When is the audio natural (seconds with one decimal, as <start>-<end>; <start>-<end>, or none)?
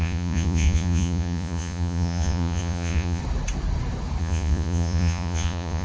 3.2-4.2